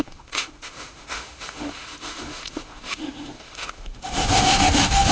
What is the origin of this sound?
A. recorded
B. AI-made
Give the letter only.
B